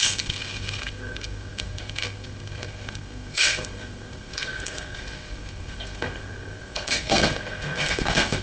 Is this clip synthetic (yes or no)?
yes